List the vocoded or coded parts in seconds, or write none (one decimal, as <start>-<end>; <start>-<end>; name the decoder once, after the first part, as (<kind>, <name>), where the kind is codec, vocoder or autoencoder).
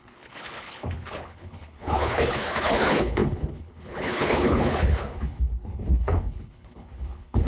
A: 0.0-7.5 (codec, HILCodec)